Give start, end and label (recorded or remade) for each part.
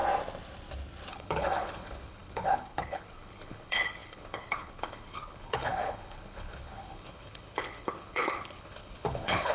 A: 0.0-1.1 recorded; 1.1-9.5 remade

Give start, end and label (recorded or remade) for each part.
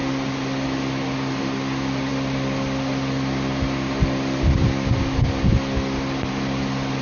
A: 0.0-7.0 recorded